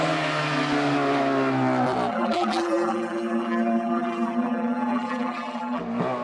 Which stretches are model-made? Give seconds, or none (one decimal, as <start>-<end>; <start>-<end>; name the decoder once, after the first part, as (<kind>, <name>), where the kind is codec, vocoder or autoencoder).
2.1-5.8 (vocoder, BigVGAN v2)